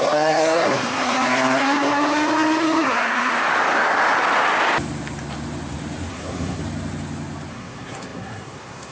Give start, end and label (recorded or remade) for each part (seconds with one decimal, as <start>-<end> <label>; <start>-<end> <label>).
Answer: 0.0-3.3 remade; 3.3-6.1 recorded; 6.1-6.6 remade; 6.6-7.5 recorded; 7.5-8.9 remade